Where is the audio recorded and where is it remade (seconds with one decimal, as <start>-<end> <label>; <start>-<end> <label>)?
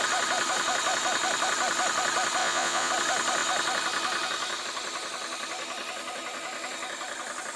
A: 0.0-2.4 recorded; 2.4-2.9 remade; 2.9-7.6 recorded